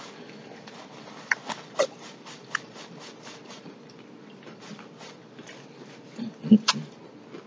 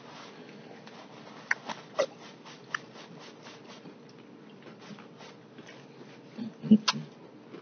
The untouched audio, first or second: second